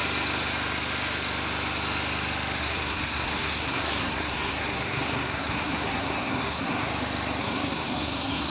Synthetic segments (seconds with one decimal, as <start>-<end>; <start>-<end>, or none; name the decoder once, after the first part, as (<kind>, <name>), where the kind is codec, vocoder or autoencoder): 2.6-6.9 (codec, SNAC); 7.4-8.5